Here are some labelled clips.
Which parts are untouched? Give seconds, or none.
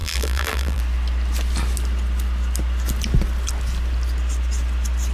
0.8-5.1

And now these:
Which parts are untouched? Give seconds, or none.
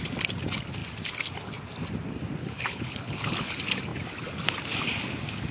0.0-2.4; 3.5-5.5